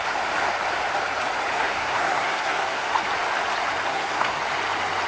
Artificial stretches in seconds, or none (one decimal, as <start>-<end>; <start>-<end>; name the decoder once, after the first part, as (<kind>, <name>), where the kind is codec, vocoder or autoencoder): 1.5-2.9 (codec, SNAC); 3.9-4.4